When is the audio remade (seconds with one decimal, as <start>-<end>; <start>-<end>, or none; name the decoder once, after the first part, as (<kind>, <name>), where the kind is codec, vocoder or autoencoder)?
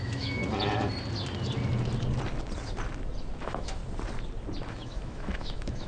0.0-0.4 (autoencoder, DAC-VAE); 3.4-3.8; 4.7-5.9